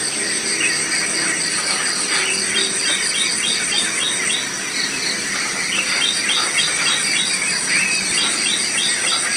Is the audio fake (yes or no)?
yes